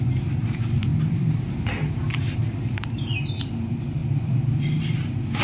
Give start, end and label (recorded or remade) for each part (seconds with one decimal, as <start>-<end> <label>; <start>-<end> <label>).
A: 0.0-5.4 remade